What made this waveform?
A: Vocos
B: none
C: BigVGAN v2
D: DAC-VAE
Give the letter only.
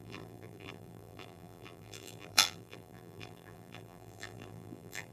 C